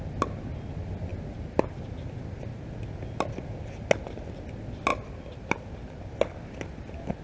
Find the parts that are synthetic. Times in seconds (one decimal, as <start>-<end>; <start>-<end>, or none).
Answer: none

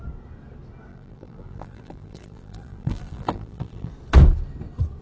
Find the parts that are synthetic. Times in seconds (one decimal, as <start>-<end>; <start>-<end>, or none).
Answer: 0.9-3.9

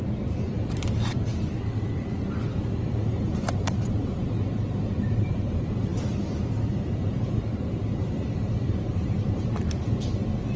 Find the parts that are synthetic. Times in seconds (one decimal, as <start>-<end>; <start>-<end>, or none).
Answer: 0.0-1.3; 2.8-10.6

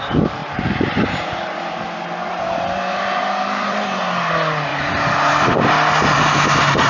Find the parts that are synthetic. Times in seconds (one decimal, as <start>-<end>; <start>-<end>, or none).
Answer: 0.4-4.3; 4.7-5.5

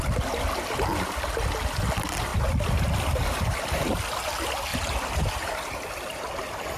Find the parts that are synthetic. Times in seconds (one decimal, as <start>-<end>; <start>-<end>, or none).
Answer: 4.7-5.5